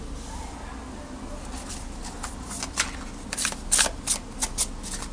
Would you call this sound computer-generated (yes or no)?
no